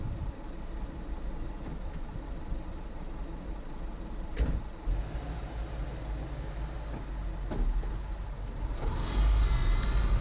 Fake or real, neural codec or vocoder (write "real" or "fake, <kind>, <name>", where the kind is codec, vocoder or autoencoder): real